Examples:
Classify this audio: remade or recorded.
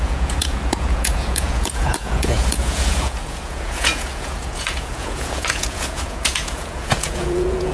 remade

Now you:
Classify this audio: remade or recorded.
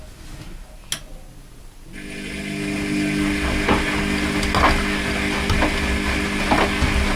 recorded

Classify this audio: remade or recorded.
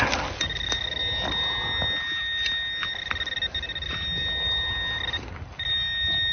recorded